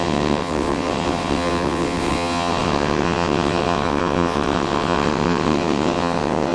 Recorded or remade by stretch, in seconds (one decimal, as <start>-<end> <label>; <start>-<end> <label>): 0.0-6.5 remade